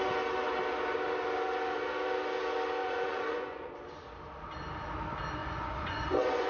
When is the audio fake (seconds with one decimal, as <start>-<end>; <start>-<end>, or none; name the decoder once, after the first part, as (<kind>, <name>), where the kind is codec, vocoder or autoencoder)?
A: 2.8-3.7 (vocoder, Vocos); 5.4-6.5